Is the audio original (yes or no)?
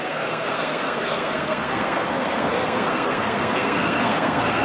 no